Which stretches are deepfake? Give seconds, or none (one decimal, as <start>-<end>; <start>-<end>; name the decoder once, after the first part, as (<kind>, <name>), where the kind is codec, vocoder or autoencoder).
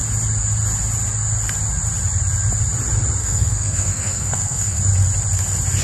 3.2-4.8 (codec, SNAC)